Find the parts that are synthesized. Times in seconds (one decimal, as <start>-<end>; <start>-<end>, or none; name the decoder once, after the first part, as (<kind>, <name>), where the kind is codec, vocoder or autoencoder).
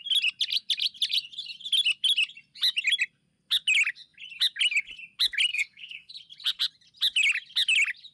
5.5-6.1 (codec, SNAC)